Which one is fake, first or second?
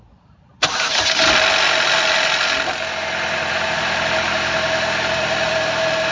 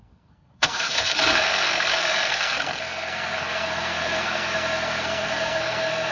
second